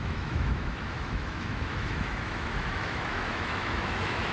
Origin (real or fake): fake